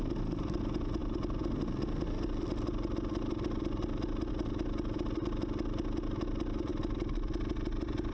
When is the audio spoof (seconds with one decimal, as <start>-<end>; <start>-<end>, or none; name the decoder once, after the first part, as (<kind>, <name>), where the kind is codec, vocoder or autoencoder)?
none